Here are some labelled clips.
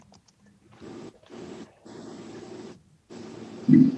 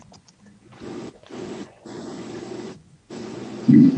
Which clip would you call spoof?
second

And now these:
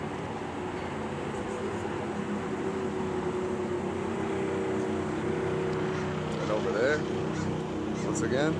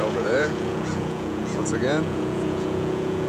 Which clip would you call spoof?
second